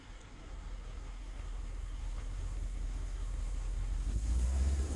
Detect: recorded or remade remade